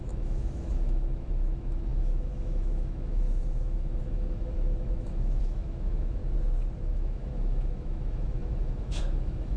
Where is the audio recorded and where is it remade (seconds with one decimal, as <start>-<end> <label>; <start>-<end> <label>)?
0.0-6.2 remade; 6.2-6.8 recorded; 6.8-9.6 remade